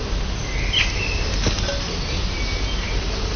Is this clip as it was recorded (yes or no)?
yes